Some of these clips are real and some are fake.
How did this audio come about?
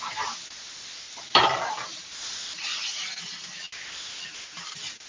real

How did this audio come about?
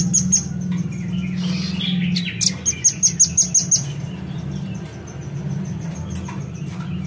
real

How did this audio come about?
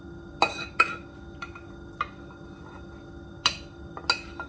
real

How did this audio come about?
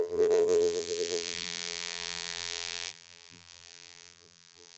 fake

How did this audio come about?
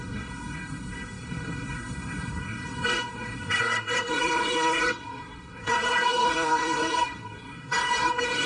fake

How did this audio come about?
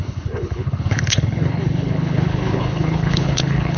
fake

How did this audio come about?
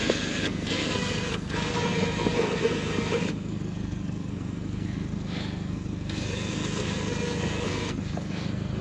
fake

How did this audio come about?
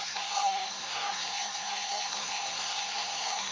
fake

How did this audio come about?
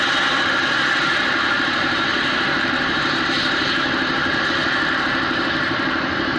fake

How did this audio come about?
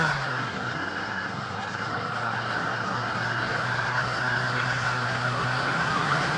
fake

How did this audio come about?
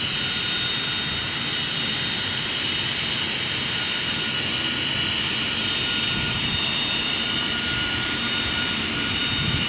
real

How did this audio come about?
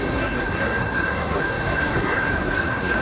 fake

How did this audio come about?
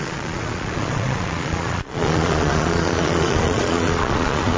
fake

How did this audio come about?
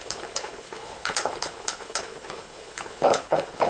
fake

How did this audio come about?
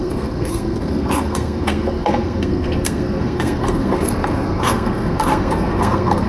fake